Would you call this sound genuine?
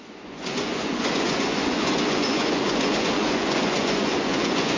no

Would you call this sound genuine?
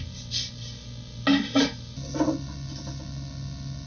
yes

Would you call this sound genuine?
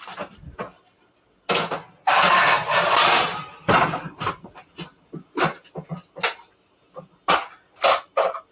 yes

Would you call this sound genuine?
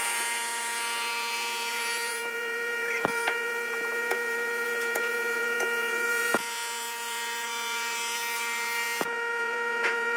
no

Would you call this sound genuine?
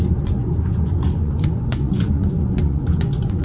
no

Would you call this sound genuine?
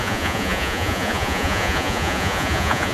no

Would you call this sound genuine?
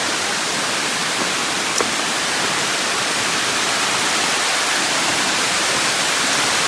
yes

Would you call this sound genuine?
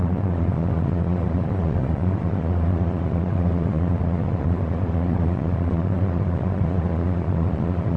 no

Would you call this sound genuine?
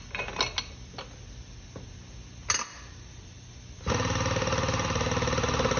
yes